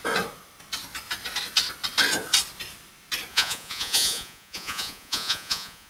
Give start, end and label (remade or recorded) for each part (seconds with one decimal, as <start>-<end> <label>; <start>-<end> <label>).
0.0-3.3 recorded; 3.3-5.9 remade